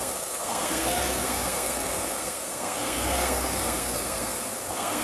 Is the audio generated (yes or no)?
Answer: yes